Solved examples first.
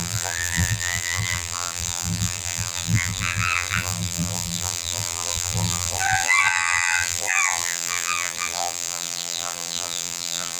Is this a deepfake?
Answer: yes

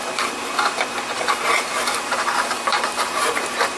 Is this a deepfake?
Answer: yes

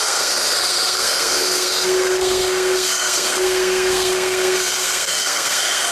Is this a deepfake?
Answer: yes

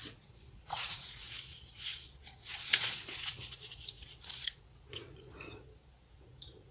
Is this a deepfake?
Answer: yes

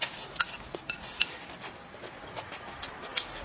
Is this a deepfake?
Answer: no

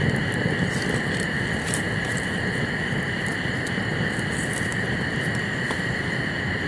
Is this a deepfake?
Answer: no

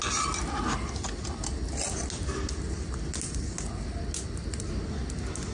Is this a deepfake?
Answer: no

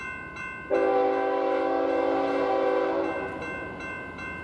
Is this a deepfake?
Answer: no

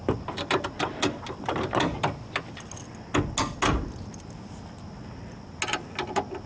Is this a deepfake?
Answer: no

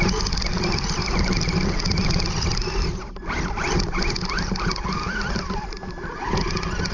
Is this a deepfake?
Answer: no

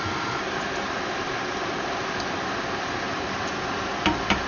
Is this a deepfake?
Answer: no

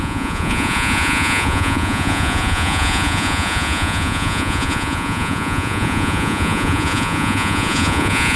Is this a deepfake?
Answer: yes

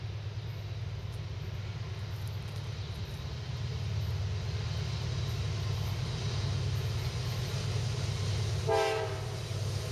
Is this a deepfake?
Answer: no